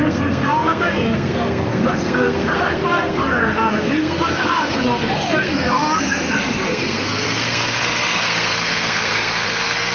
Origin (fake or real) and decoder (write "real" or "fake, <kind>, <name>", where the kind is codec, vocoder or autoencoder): fake, codec, SNAC